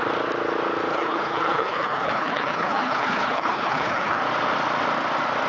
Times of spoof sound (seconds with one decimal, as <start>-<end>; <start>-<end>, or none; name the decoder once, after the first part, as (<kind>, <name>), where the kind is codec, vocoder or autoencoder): 0.9-4.2 (codec, HILCodec)

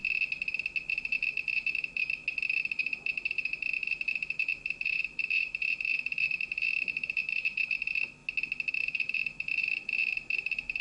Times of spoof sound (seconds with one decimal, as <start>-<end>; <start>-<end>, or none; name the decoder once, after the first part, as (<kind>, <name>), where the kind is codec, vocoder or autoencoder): 0.9-2.2 (vocoder, BigVGAN v2); 2.8-8.2; 8.7-10.8

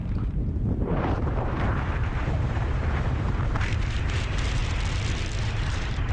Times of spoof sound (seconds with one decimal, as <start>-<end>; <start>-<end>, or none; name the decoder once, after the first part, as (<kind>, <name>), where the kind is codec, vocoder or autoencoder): 0.0-4.6 (vocoder, BigVGAN v2); 5.4-6.1

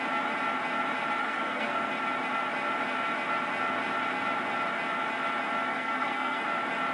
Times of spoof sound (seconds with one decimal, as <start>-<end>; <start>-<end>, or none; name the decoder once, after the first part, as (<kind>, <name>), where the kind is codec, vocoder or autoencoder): 1.2-1.9 (codec, SNAC); 5.7-6.4

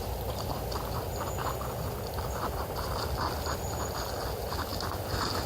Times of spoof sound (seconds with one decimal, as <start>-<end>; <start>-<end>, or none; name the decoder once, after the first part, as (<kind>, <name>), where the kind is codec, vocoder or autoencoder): none

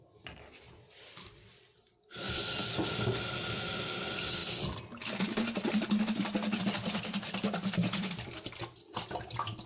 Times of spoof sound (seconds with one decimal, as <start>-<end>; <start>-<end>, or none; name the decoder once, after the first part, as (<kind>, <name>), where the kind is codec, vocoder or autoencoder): 0.0-2.4 (vocoder, BigVGAN v2); 3.4-4.4; 6.6-9.7

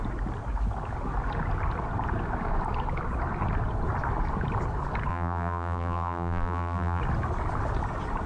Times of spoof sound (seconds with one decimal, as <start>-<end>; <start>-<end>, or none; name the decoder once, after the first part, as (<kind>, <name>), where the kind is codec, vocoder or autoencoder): 5.1-7.0 (vocoder, BigVGAN v2)

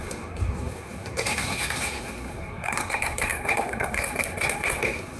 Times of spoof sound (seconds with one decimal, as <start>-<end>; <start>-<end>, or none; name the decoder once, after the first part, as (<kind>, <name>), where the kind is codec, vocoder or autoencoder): 0.0-5.2 (codec, SNAC)